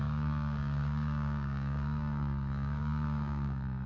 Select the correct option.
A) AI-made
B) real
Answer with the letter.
A